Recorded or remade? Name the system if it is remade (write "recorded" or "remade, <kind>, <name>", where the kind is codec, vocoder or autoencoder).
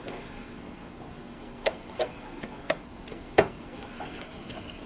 remade, codec, SNAC